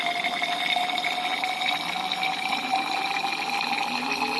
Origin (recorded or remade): recorded